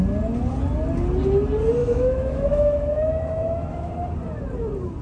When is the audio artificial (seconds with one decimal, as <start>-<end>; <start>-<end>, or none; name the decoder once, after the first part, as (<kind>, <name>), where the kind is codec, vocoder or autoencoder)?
1.8-3.9 (autoencoder, DAC-VAE)